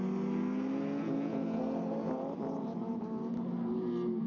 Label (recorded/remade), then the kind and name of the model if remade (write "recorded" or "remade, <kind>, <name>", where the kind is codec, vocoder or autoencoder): recorded